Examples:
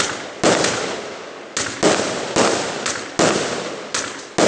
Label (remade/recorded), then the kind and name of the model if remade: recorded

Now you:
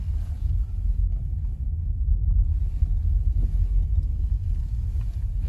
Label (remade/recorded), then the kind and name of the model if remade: recorded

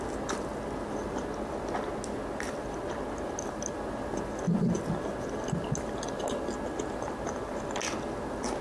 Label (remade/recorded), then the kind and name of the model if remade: recorded